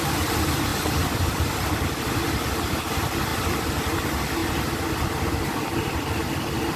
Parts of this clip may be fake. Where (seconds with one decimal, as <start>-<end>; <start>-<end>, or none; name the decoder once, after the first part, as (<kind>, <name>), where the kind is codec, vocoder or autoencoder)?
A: 3.3-3.8 (vocoder, BigVGAN v2); 4.4-5.1